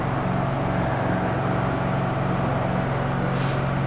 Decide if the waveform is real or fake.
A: real